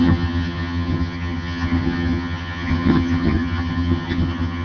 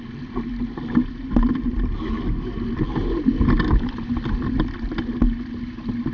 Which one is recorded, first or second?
second